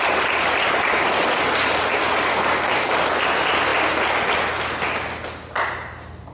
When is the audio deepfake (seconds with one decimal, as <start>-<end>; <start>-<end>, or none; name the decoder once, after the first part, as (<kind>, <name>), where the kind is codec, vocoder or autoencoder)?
none